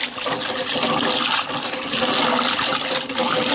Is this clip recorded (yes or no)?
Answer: yes